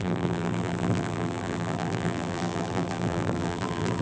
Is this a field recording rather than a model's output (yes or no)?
no